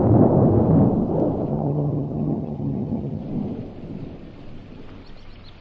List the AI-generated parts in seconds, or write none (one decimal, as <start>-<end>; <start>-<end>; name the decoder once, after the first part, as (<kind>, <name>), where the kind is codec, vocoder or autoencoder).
1.5-3.2 (vocoder, HiFi-GAN)

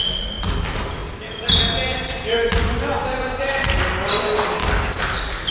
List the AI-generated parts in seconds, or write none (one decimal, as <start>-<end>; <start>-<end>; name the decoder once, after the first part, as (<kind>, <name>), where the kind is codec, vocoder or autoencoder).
none

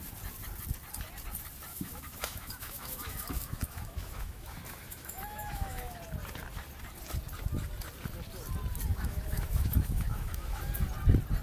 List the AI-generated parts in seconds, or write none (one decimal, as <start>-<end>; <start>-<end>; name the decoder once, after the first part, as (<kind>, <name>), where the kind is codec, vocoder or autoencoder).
1.7-6.0 (autoencoder, DAC-VAE); 8.9-10.6

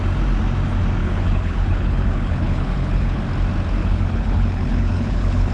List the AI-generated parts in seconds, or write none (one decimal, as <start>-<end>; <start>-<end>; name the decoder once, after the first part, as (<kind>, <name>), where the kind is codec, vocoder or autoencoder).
1.0-3.2 (codec, HILCodec); 3.8-5.5

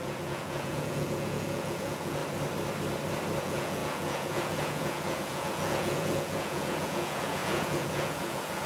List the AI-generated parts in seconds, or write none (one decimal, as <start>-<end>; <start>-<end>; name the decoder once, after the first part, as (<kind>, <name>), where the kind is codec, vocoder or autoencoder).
0.0-2.2 (vocoder, Vocos); 3.4-8.7